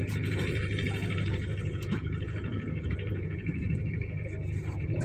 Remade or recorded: remade